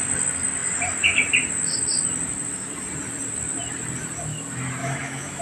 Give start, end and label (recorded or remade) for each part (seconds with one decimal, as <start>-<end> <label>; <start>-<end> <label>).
0.0-4.8 recorded; 4.8-5.4 remade